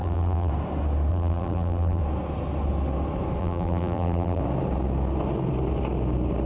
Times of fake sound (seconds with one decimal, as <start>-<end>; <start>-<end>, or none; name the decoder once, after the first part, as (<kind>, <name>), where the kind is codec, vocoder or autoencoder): 0.0-0.5 (vocoder, BigVGAN v2); 1.1-2.0; 3.4-4.4